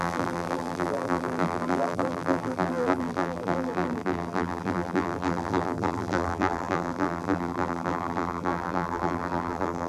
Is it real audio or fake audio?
fake